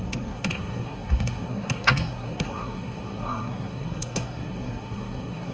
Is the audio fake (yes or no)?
yes